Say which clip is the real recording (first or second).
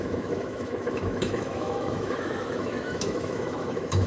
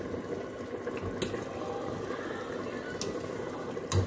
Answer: second